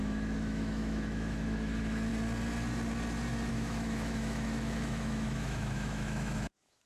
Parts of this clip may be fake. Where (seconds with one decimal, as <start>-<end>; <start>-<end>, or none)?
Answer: 0.0-2.1; 3.5-6.9